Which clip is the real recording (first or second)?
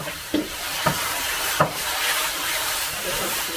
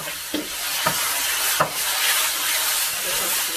second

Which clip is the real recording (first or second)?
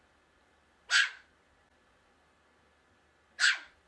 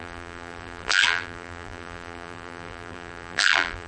first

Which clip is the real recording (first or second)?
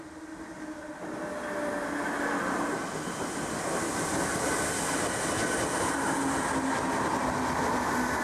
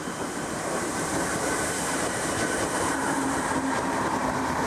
first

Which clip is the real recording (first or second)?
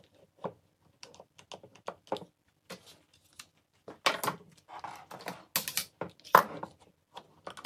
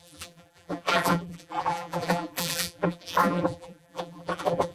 first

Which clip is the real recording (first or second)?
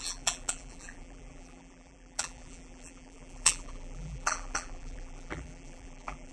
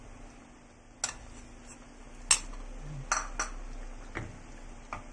second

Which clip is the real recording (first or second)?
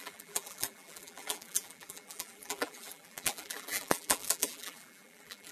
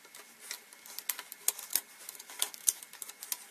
second